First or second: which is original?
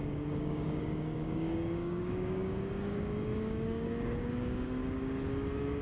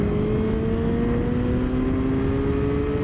second